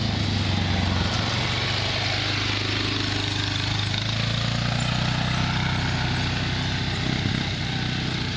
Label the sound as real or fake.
real